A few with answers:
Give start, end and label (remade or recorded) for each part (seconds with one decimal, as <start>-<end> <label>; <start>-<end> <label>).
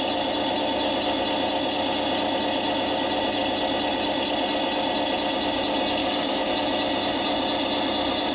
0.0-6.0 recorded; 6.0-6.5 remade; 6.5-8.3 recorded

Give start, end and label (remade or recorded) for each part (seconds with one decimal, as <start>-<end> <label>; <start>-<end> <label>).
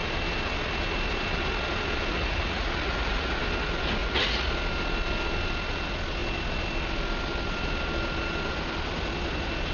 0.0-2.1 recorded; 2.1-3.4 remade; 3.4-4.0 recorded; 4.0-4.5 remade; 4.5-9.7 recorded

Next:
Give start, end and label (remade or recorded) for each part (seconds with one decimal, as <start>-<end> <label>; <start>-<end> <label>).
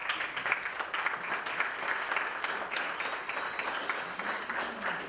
0.0-5.1 recorded